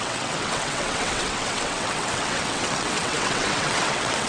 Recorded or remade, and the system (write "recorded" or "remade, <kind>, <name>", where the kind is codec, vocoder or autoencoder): remade, vocoder, WaveNeXt